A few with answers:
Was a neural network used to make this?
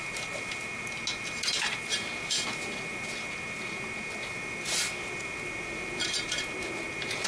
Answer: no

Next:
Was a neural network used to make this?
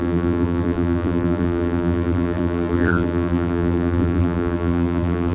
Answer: yes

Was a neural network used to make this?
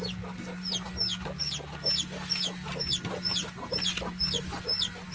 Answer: no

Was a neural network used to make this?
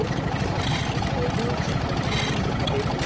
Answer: no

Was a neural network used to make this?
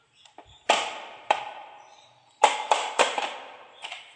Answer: yes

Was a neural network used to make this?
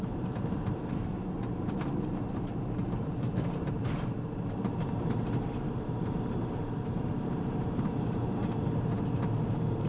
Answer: yes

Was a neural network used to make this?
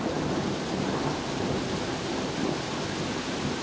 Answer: no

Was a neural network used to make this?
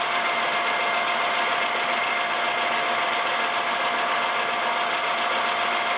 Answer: no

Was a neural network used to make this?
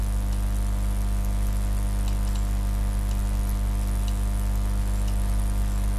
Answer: no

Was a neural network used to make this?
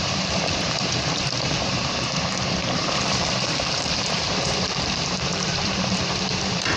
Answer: yes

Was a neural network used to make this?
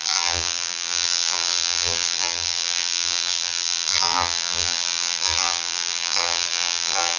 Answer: yes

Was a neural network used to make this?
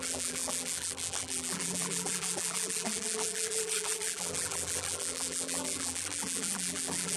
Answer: yes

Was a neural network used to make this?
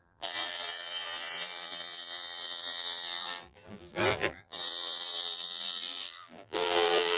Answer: yes